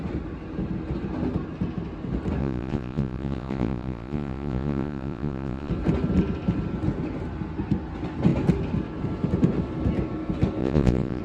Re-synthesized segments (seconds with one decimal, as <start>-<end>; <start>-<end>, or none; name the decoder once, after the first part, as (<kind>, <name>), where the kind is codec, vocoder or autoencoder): 2.4-5.7 (vocoder, Vocos); 10.6-11.2